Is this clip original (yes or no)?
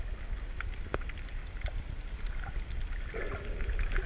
yes